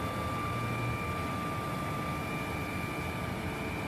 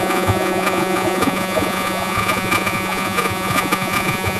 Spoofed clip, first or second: second